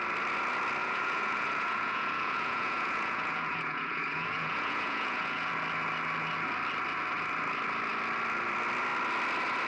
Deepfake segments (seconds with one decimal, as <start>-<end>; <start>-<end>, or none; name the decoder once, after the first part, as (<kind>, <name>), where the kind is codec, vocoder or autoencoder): 0.8-5.5 (vocoder, Vocos)